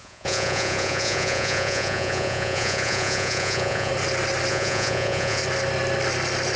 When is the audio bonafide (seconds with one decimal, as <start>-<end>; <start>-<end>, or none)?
3.9-4.5; 5.4-6.6